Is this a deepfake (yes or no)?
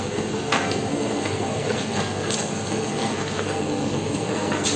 yes